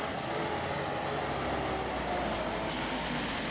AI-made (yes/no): no